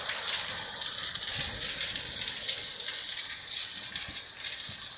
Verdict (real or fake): real